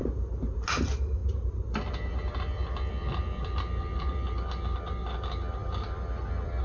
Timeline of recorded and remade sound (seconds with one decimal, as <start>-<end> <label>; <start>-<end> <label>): 0.0-5.6 recorded; 5.6-6.6 remade